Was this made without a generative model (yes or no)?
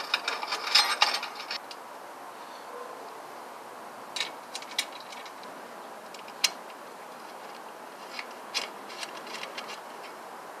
yes